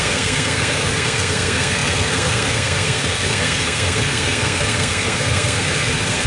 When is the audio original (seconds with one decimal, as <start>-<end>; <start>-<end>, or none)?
none